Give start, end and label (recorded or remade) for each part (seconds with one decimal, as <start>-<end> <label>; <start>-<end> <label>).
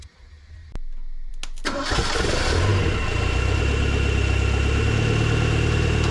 0.0-6.1 recorded